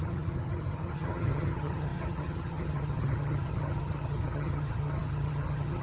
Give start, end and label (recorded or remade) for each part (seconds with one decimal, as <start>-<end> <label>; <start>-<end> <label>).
0.0-5.8 remade